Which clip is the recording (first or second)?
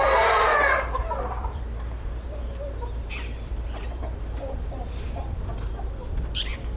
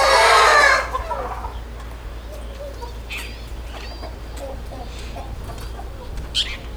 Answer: second